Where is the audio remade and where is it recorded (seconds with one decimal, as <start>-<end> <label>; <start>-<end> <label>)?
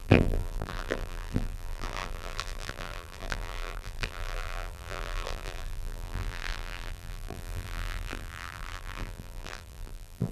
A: 0.0-10.3 remade